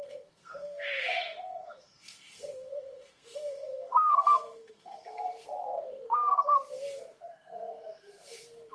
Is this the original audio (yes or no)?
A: no